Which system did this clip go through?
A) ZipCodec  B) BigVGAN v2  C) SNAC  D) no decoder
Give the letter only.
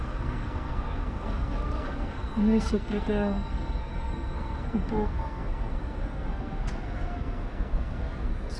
C